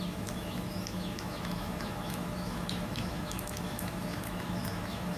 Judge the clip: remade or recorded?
remade